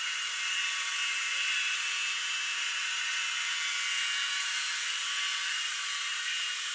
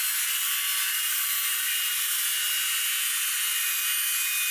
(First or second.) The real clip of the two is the second